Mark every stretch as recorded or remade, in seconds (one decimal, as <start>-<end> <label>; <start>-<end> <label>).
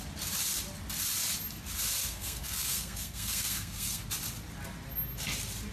0.0-2.0 recorded; 2.0-4.0 remade; 4.0-5.7 recorded